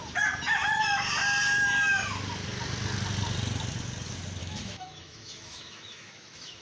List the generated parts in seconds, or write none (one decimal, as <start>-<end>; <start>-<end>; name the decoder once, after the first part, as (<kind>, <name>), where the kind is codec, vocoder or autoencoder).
4.4-6.6 (autoencoder, DAC-VAE)